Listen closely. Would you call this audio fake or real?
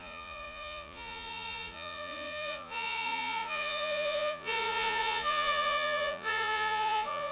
fake